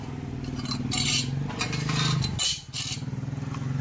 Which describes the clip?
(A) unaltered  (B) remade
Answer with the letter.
A